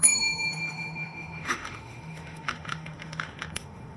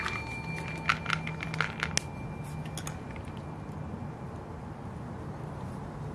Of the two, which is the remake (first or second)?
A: first